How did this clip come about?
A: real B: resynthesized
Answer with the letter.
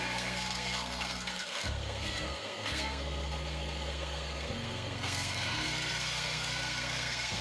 B